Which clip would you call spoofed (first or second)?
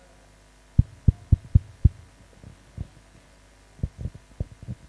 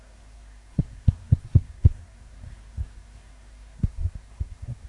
second